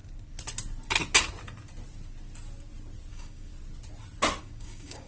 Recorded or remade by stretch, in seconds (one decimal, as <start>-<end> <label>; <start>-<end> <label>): 0.0-3.1 recorded; 3.1-3.5 remade; 3.5-4.4 recorded; 4.4-5.1 remade